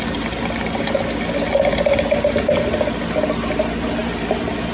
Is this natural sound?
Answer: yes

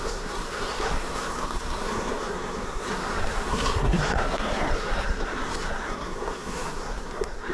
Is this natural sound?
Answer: no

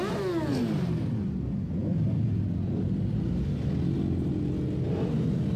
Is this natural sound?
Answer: yes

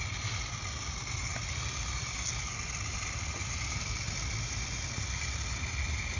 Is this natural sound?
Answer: yes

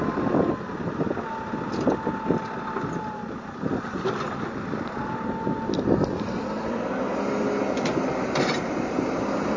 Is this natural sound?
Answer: yes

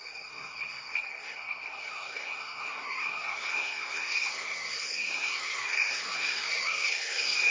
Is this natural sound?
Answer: no